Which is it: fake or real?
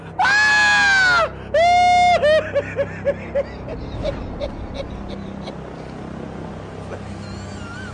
real